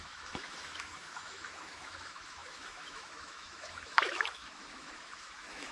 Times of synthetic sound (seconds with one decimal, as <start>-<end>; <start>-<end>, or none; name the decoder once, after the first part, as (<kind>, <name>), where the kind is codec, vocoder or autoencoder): 0.0-5.7 (autoencoder, DAC-VAE)